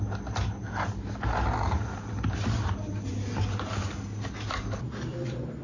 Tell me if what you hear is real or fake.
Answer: real